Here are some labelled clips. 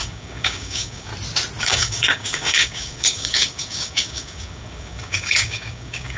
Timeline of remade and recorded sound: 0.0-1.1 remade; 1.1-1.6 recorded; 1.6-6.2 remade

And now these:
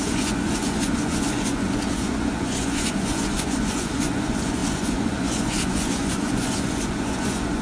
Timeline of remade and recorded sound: 0.0-7.6 remade